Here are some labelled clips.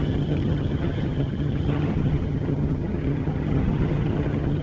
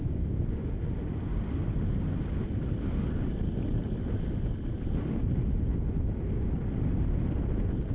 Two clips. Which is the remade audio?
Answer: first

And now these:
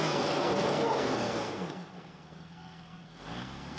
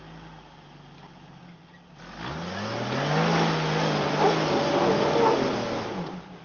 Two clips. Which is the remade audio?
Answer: first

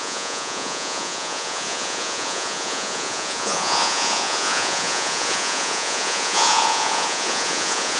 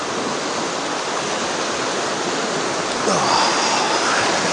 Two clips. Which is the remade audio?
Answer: first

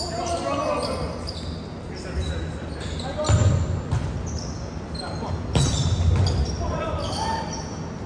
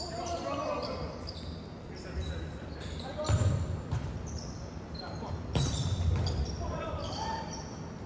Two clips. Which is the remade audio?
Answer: second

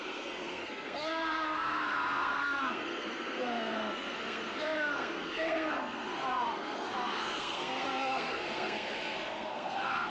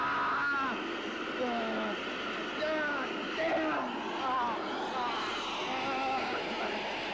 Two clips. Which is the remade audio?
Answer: first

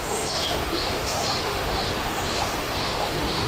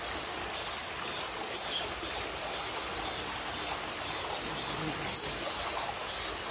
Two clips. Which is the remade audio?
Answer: first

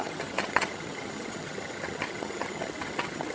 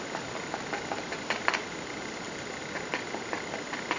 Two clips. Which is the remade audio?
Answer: first